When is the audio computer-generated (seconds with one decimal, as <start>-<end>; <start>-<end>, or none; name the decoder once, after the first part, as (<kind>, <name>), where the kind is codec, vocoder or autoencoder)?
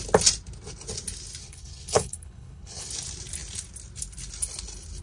1.4-2.9 (codec, HILCodec)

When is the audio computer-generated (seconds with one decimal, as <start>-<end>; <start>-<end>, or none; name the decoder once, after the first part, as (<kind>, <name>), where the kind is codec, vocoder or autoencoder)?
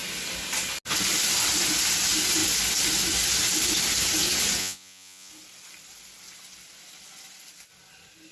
4.6-5.3 (vocoder, Vocos)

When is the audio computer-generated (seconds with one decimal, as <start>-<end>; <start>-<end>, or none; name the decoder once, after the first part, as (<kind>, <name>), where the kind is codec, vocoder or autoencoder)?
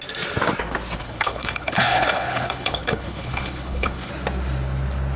1.0-4.1 (codec, HILCodec)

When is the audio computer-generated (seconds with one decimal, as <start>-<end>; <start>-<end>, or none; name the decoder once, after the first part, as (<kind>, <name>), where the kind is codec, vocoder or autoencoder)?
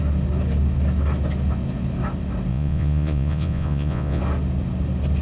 2.5-4.2 (vocoder, Vocos)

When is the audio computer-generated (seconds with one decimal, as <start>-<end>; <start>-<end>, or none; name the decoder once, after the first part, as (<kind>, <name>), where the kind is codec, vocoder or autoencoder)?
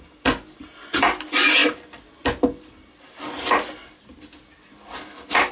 none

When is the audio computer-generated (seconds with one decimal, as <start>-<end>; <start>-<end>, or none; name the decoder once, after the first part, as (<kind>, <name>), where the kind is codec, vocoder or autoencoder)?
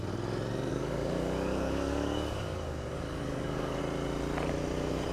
0.7-3.8 (codec, DAC)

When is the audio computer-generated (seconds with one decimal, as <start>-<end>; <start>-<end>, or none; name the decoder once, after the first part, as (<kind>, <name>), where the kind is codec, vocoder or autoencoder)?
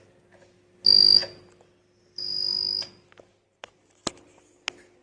none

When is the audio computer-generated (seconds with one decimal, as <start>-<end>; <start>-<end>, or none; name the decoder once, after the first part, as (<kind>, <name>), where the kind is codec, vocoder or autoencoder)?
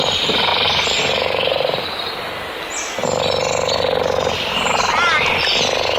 0.5-1.8 (vocoder, BigVGAN v2)